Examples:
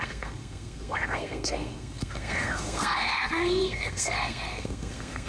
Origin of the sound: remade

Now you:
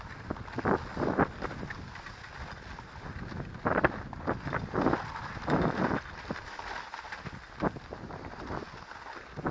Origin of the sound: recorded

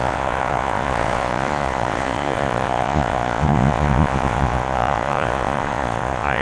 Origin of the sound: remade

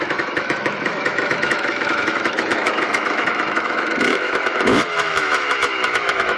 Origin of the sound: remade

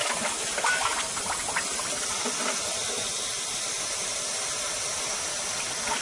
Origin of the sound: recorded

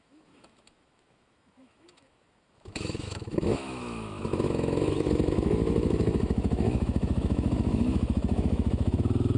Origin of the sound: remade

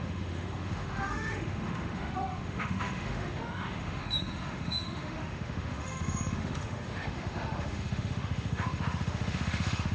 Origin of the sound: remade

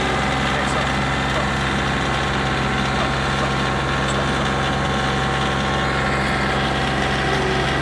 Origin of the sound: recorded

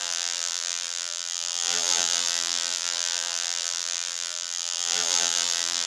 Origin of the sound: remade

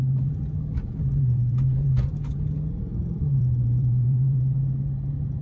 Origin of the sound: remade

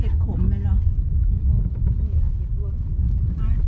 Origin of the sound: recorded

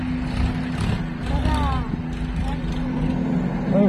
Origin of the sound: recorded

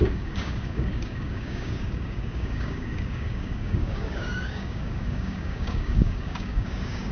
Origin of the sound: remade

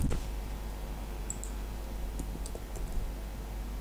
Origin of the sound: recorded